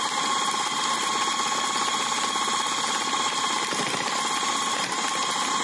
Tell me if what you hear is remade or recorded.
recorded